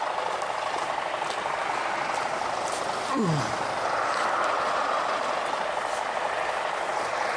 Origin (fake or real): real